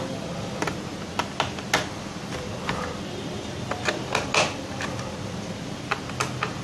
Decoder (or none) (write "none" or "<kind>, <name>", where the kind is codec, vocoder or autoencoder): none